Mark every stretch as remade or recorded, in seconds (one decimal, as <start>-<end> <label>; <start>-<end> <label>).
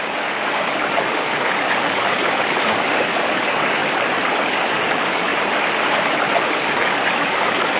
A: 0.0-3.8 remade; 3.8-4.4 recorded; 4.4-5.3 remade; 5.3-6.4 recorded; 6.4-7.8 remade